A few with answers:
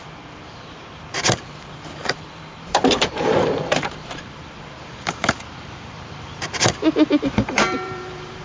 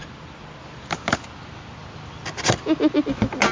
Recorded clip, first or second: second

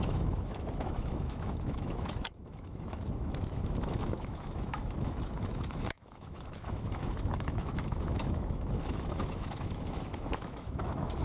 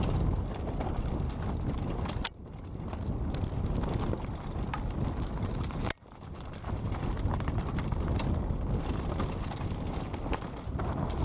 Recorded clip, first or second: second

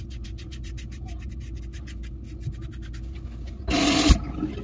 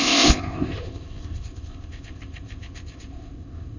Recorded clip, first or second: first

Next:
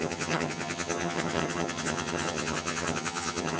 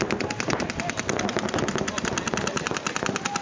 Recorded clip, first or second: second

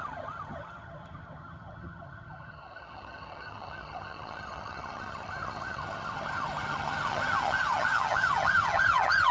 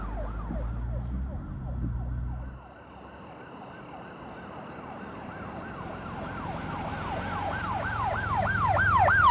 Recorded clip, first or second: second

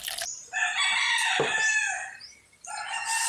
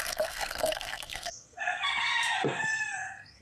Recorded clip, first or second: first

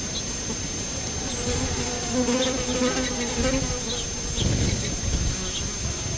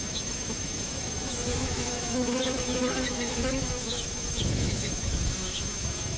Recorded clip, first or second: first